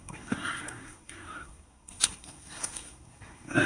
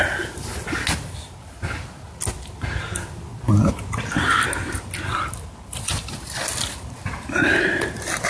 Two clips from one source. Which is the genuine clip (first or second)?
second